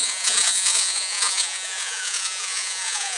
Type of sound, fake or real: fake